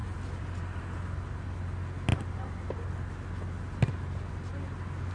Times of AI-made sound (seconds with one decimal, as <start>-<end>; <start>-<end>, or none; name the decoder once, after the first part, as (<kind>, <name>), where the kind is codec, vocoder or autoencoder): 0.0-0.8 (vocoder, BigVGAN v2)